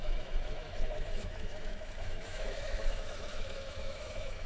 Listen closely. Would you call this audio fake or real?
fake